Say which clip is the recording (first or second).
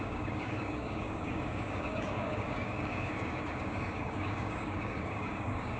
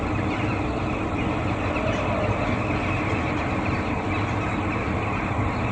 second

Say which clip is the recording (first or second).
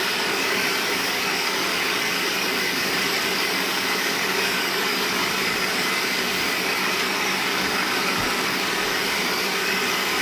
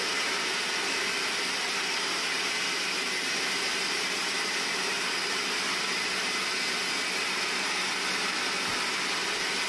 second